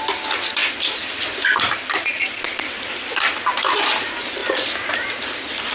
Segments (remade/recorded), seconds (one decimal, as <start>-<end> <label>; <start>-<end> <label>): 0.0-0.6 recorded; 0.6-4.0 remade; 4.0-5.7 recorded